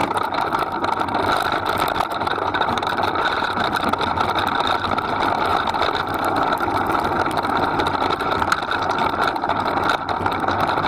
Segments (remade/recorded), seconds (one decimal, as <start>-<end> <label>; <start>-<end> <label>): 0.0-0.5 remade; 0.5-2.1 recorded; 2.1-3.6 remade; 3.6-10.9 recorded